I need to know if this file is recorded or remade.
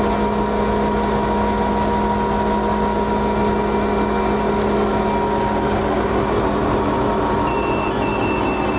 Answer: recorded